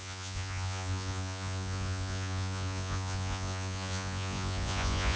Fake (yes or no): yes